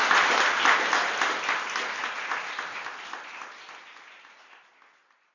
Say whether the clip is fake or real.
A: real